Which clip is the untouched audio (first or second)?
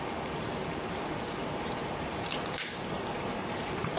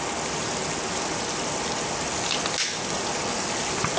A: second